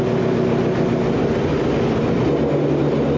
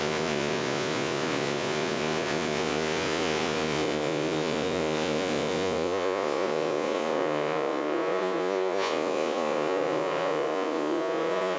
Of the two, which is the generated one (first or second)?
second